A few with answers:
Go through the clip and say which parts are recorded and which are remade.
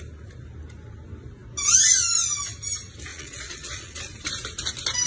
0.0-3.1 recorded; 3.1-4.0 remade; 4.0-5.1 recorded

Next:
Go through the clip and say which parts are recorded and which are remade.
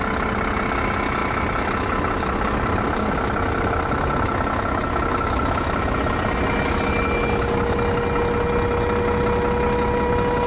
0.0-1.2 recorded; 1.2-2.8 remade; 2.8-10.5 recorded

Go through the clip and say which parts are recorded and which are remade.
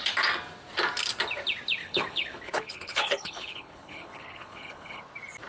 0.0-1.8 recorded; 1.8-5.0 remade; 5.0-5.5 recorded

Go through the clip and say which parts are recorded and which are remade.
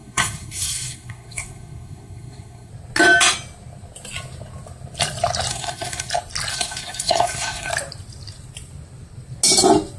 0.0-2.7 remade; 2.7-5.5 recorded; 5.5-6.1 remade; 6.1-6.5 recorded; 6.5-7.7 remade; 7.7-10.0 recorded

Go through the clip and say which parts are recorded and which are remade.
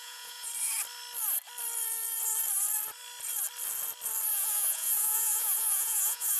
0.0-0.5 remade; 0.5-4.3 recorded; 4.3-6.4 remade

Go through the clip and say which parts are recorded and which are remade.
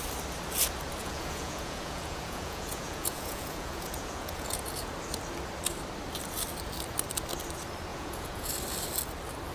0.0-1.0 recorded; 1.0-4.9 remade; 4.9-7.9 recorded; 7.9-8.5 remade; 8.5-9.5 recorded